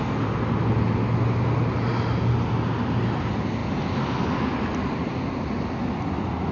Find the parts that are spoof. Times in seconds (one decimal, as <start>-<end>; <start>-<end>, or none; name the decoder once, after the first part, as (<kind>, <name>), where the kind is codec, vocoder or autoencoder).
none